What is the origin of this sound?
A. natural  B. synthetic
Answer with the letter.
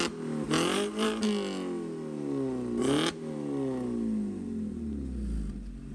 A